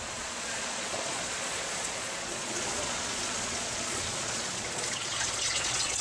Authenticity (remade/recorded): remade